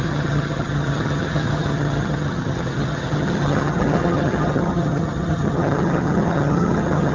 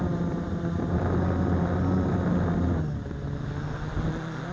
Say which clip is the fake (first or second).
first